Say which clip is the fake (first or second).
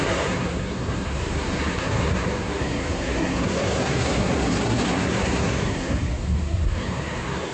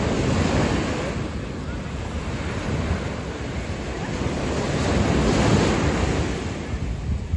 first